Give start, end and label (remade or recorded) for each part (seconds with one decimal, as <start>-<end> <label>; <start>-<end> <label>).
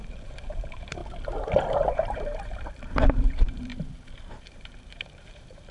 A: 0.0-1.0 remade; 1.0-1.9 recorded; 1.9-3.7 remade; 3.7-4.3 recorded; 4.3-5.7 remade